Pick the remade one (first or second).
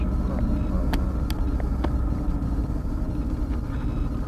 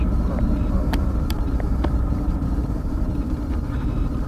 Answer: second